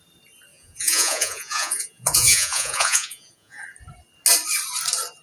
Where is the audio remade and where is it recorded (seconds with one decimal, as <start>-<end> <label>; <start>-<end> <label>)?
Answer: 0.0-0.5 recorded; 0.5-3.6 remade; 3.6-5.2 recorded